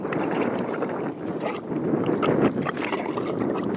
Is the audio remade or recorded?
recorded